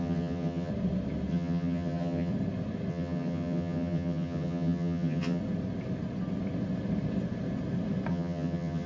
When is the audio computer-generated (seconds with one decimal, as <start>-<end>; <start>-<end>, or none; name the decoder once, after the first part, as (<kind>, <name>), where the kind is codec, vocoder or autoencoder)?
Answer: 0.0-0.7 (vocoder, HiFi-GAN); 1.3-2.3; 2.9-5.4; 8.1-8.9